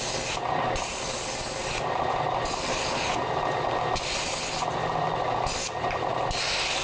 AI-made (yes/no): no